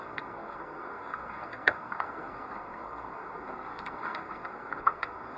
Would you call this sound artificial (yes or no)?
yes